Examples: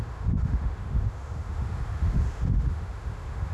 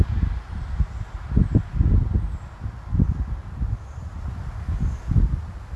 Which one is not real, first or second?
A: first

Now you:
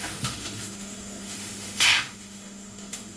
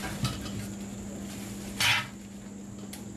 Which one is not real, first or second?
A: first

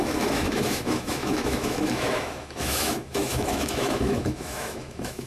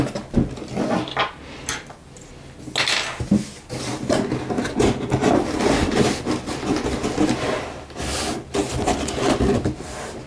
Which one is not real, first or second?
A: first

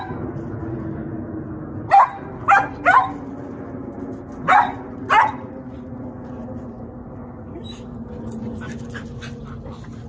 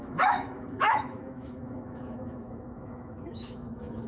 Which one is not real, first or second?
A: second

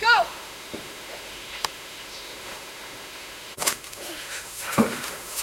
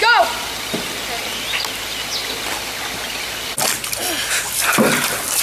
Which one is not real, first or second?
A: first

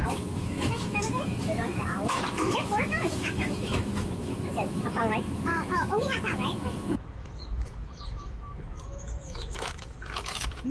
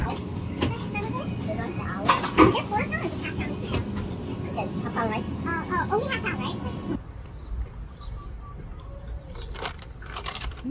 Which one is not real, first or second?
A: first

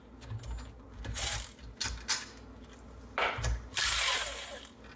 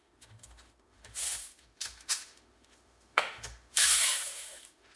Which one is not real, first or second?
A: second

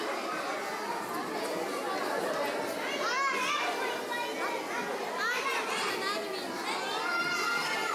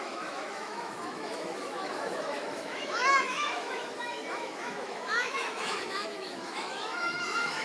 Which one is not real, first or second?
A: second